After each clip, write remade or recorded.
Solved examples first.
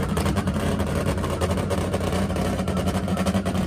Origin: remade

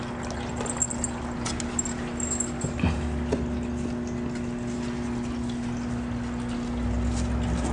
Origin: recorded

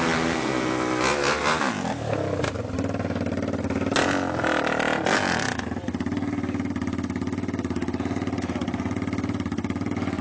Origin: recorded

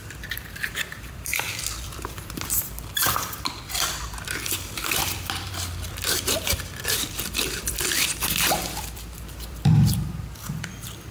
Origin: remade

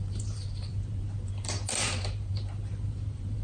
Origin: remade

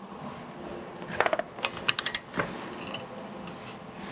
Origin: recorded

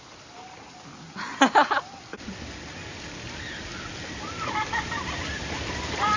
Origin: remade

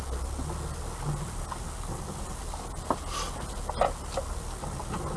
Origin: recorded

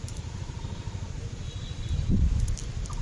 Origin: remade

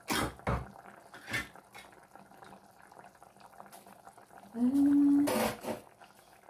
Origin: recorded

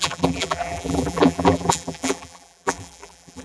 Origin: remade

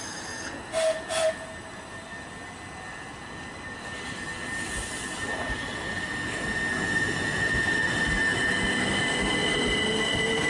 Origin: recorded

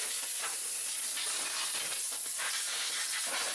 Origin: recorded